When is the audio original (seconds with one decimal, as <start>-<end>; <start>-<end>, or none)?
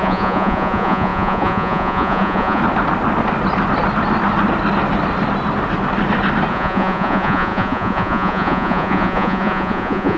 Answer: 2.6-6.5